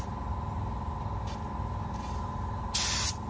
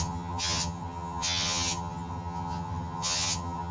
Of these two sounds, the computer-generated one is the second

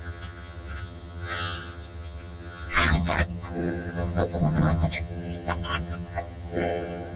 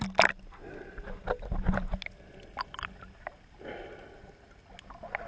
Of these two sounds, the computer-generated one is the first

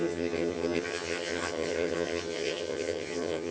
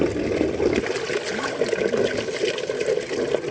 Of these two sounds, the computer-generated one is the first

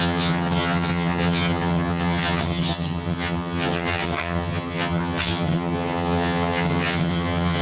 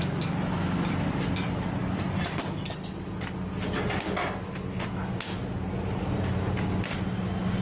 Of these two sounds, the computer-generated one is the first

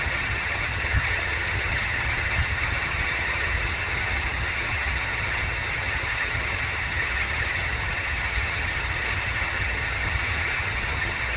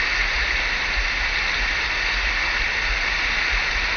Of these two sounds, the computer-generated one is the first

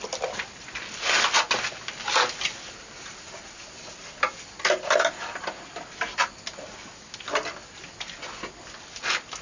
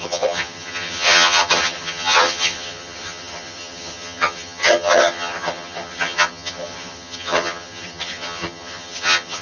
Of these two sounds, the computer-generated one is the second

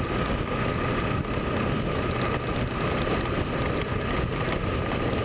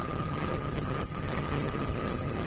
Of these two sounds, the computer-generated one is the second